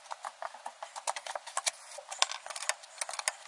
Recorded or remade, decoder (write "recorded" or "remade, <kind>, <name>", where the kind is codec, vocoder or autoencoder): recorded